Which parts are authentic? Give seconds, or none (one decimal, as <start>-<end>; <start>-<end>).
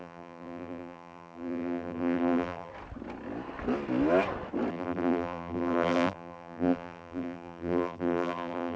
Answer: 2.7-4.7